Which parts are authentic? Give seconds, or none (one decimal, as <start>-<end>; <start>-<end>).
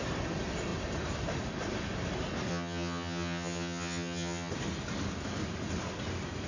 0.0-2.5; 4.5-6.5